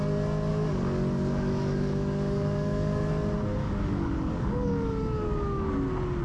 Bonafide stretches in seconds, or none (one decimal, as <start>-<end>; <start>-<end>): 0.0-0.5; 3.1-3.6; 5.7-6.2